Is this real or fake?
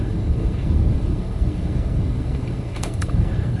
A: fake